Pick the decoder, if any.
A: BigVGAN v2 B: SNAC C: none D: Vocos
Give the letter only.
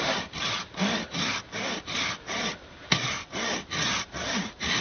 C